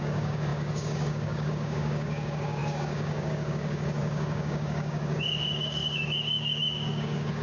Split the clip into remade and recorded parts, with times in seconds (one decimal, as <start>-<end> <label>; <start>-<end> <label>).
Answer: 0.0-7.4 remade